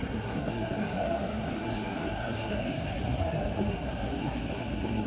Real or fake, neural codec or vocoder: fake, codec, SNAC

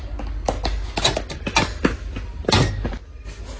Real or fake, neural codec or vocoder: real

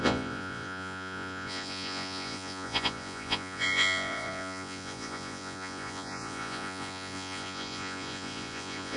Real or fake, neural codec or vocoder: fake, vocoder, Vocos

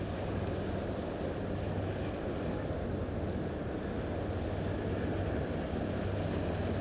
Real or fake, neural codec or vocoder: real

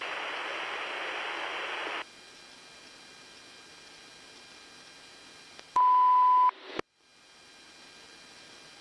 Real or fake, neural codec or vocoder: real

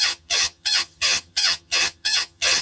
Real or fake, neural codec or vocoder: fake, vocoder, HiFi-GAN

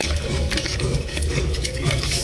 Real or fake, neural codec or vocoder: fake, codec, DAC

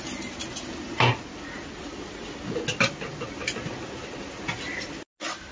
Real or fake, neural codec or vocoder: real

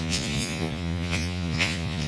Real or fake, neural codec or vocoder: fake, vocoder, Vocos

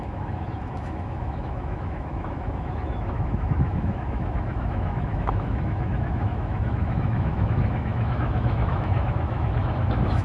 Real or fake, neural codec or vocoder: fake, autoencoder, DAC-VAE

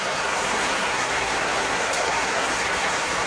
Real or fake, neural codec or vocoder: fake, codec, SNAC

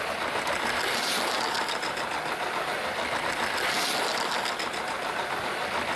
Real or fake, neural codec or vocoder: real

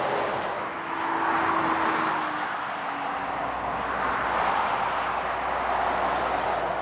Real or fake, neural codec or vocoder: real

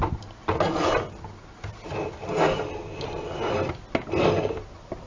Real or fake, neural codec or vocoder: real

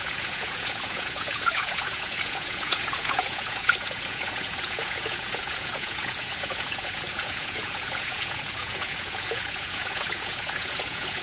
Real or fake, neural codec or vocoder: fake, vocoder, Vocos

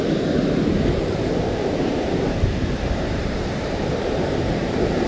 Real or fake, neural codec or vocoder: fake, vocoder, BigVGAN v2